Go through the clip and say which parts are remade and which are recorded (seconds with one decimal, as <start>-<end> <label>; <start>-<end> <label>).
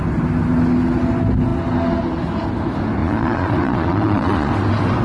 0.0-3.0 recorded; 3.0-4.5 remade; 4.5-5.0 recorded